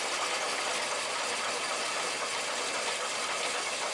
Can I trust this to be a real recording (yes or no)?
yes